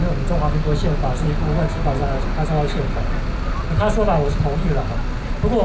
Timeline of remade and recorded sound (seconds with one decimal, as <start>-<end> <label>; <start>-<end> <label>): 0.0-5.6 recorded